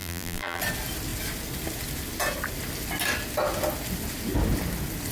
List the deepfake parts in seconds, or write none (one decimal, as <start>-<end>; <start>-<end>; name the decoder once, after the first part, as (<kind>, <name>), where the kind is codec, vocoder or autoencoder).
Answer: 0.0-0.6 (vocoder, BigVGAN v2)